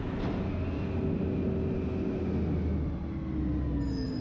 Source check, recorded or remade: recorded